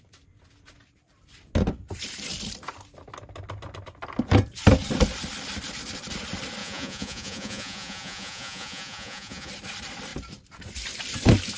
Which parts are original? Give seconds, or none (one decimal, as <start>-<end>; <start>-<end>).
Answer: 0.0-6.6; 9.5-11.6